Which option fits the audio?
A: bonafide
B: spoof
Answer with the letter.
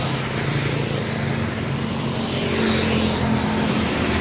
A